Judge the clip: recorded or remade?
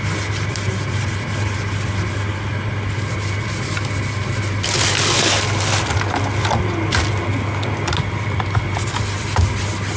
recorded